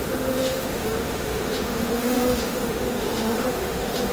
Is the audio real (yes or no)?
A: no